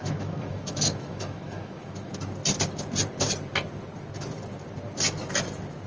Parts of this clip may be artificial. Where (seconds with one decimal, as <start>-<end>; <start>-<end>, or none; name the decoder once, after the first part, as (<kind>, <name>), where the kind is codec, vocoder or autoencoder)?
0.0-2.1 (autoencoder, DAC-VAE)